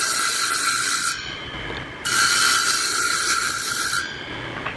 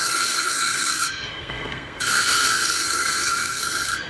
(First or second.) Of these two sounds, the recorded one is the first